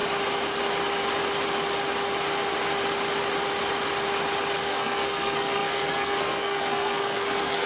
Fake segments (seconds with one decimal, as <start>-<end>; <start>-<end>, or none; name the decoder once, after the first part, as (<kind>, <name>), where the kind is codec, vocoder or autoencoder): 4.6-7.7 (codec, SNAC)